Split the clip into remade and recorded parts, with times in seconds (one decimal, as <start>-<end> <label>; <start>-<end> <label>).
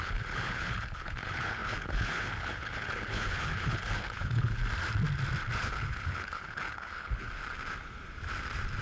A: 0.0-4.6 remade; 4.6-5.6 recorded; 5.6-7.4 remade; 7.4-8.8 recorded